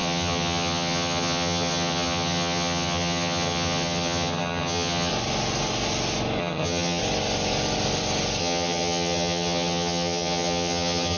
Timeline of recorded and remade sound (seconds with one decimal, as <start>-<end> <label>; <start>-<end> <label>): 0.0-5.1 remade; 5.1-6.4 recorded; 6.4-7.0 remade; 7.0-8.4 recorded; 8.4-11.2 remade